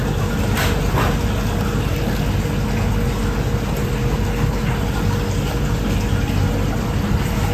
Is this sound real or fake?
real